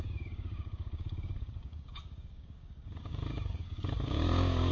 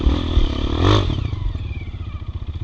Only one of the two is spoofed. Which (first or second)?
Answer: first